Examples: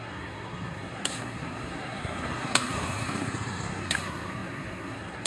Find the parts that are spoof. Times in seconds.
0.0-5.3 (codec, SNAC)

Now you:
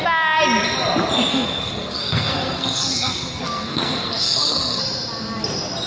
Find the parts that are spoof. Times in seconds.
1.3-4.8 (codec, SNAC)

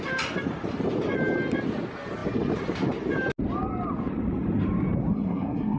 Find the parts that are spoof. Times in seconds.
5.1-5.8 (codec, SNAC)

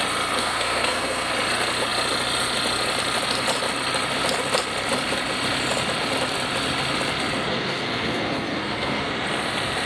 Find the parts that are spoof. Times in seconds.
0.4-1.3 (codec, SNAC); 7.5-9.1

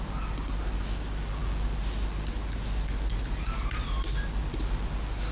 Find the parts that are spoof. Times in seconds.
none

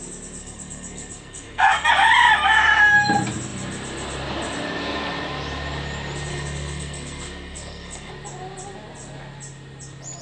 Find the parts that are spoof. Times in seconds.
0.4-1.9 (codec, SNAC); 6.3-8.1

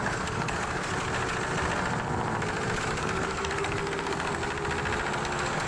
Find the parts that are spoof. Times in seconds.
0.0-0.9 (codec, SNAC); 3.0-4.4; 5.2-5.7